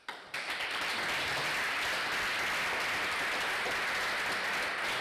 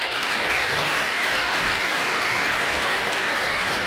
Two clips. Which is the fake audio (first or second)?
second